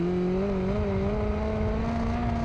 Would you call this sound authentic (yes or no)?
yes